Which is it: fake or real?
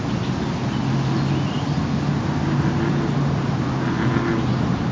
real